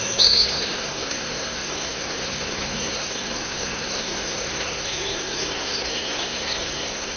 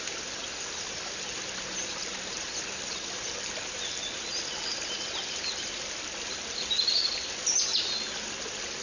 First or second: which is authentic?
second